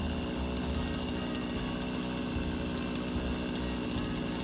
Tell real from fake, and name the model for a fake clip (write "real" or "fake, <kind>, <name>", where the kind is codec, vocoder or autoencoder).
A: real